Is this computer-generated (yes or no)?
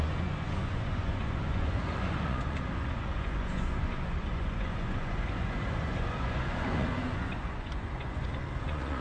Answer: yes